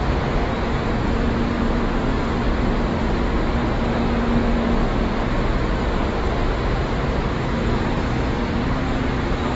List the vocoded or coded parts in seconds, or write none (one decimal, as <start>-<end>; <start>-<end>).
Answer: none